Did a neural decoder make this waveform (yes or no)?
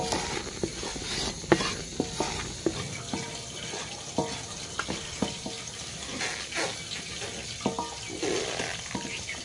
no